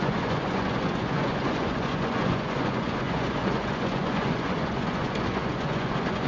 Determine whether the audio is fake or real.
fake